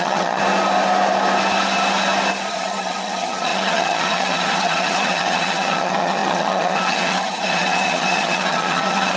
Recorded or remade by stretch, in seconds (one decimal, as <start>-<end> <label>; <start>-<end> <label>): 0.0-0.4 remade; 0.4-2.5 recorded; 2.5-9.2 remade